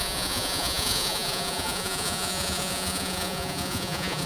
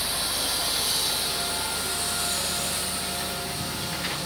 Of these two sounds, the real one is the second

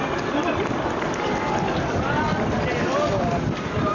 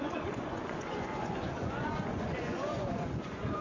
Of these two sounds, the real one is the first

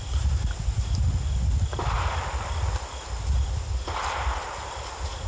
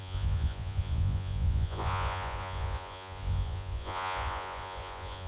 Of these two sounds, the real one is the first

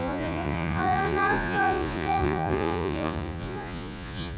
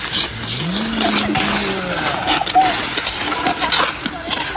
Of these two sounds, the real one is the second